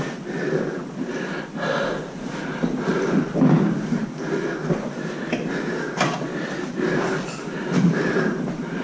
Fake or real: real